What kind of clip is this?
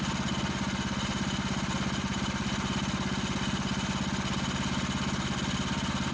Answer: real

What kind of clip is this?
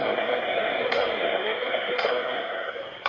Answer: fake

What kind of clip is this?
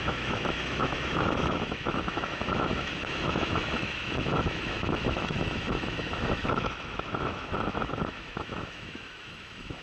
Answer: fake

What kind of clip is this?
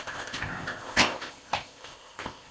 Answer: fake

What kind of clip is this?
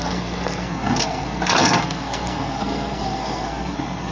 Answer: fake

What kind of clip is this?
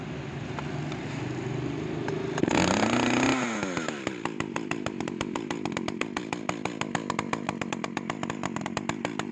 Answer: real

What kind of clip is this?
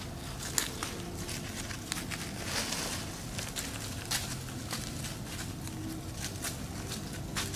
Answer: real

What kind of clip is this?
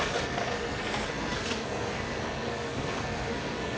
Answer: fake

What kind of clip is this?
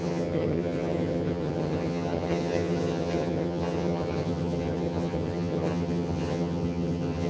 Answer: fake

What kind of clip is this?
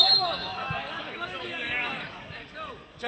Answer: fake